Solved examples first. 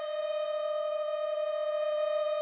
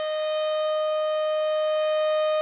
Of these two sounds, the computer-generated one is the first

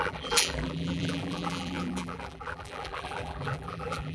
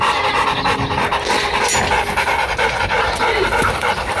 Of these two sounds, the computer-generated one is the first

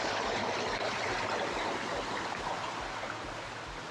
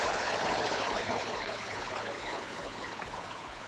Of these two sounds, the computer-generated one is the second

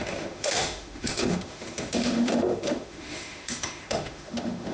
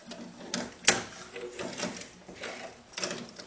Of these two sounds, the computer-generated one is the first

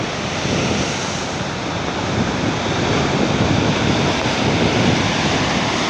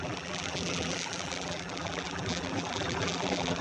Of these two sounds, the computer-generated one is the second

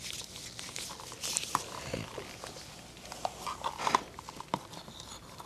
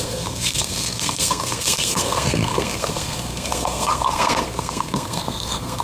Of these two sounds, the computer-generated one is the second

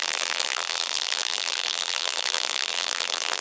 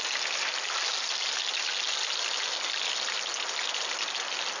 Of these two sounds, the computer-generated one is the first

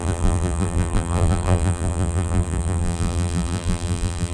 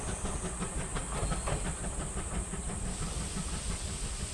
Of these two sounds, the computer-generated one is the first